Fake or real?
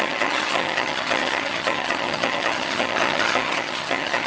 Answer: fake